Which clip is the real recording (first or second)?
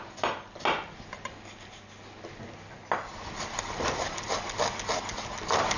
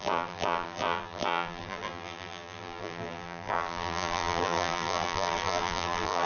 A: first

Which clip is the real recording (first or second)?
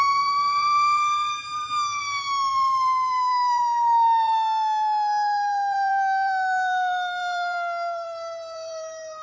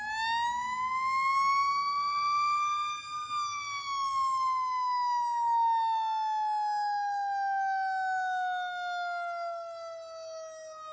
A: second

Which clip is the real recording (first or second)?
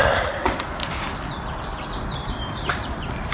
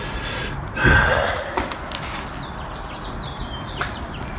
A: second